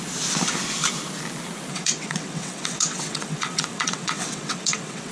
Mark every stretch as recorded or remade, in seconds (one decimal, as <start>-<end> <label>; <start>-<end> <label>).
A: 0.0-1.7 recorded; 1.7-5.1 remade